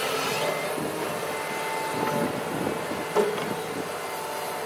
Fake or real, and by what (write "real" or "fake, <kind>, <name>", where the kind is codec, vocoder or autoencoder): real